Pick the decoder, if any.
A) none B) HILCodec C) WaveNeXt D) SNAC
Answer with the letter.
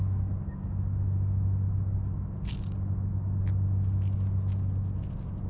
A